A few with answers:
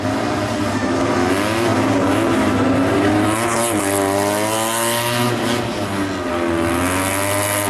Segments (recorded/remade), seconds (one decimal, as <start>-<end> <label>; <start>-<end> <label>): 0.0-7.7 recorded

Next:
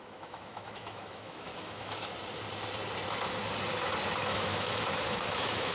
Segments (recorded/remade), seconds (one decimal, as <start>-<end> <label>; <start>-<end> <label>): 0.0-2.1 remade; 2.1-4.2 recorded; 4.2-5.7 remade

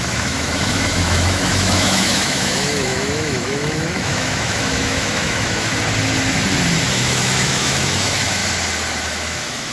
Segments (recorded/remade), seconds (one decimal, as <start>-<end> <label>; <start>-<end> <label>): 0.0-5.7 remade; 5.7-6.9 recorded; 6.9-8.4 remade; 8.4-9.0 recorded; 9.0-9.7 remade